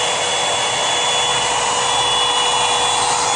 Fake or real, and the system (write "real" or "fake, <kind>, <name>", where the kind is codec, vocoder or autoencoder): real